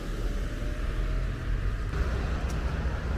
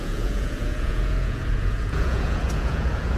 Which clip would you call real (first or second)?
first